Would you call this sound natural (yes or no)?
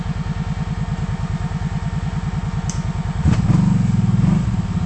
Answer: yes